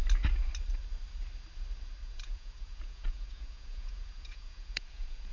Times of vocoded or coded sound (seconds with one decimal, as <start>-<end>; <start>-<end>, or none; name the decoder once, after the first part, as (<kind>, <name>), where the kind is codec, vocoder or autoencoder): 2.0-5.3 (vocoder, Vocos)